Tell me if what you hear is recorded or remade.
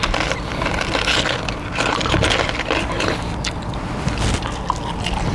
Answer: recorded